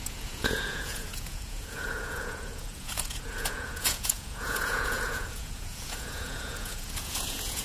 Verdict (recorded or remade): remade